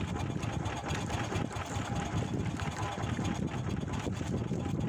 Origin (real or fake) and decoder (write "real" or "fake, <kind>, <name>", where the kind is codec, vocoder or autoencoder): real